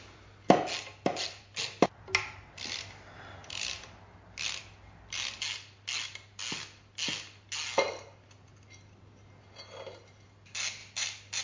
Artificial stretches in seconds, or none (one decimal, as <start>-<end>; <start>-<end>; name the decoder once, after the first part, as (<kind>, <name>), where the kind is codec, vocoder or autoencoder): none